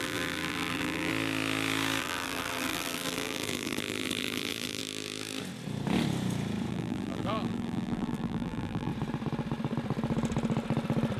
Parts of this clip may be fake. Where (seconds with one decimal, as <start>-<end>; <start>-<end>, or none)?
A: 0.0-1.1; 2.0-4.8; 6.7-8.9